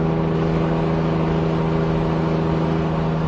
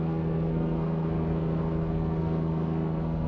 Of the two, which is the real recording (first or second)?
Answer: first